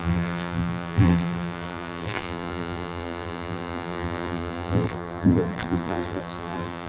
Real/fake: fake